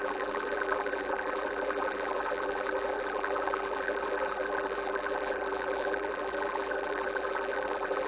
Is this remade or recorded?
remade